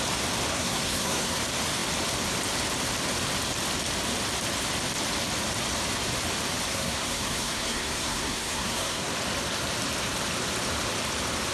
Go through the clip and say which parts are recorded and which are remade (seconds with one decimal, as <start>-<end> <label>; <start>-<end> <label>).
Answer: 0.0-0.5 recorded; 0.5-1.4 remade; 1.4-6.7 recorded; 6.7-9.1 remade; 9.1-11.5 recorded